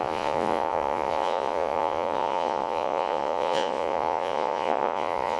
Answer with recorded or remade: remade